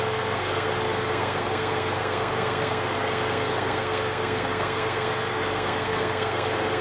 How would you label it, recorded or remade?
remade